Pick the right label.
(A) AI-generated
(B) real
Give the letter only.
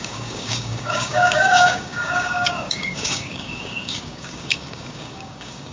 A